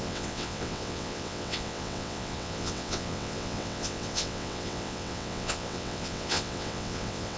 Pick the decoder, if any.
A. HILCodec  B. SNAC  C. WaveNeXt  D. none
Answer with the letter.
C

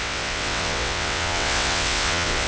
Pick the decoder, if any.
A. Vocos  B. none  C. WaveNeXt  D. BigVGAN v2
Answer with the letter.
C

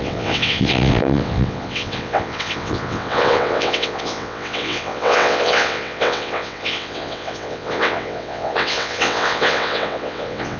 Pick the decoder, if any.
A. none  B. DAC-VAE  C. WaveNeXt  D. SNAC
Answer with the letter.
C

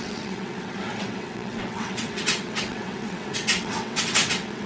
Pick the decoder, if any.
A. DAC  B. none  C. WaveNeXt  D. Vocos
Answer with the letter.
C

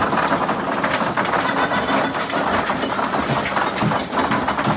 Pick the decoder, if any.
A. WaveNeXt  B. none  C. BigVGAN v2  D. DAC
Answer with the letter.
B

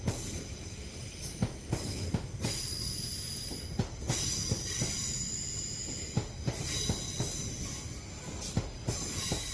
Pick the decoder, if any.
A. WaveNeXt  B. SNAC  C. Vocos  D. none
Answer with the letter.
D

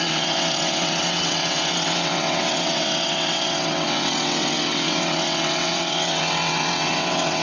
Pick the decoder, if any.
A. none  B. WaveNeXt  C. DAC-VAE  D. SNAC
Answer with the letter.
B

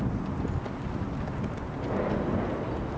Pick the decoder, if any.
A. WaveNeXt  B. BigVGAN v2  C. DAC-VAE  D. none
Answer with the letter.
D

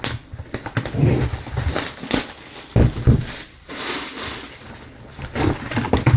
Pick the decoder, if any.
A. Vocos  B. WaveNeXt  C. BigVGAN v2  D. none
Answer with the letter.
D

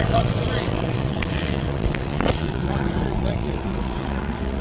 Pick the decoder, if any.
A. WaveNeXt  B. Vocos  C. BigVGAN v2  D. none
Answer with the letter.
A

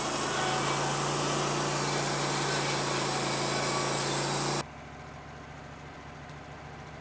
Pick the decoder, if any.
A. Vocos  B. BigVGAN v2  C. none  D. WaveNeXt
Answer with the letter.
C